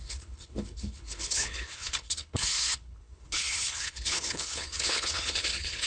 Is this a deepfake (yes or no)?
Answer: yes